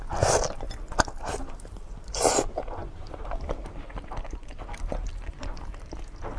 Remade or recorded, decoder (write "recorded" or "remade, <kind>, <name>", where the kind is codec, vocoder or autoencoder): recorded